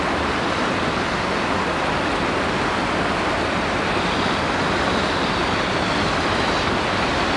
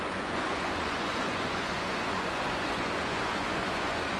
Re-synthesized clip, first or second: second